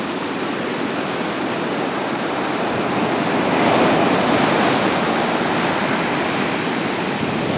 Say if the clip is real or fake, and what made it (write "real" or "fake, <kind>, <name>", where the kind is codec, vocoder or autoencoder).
real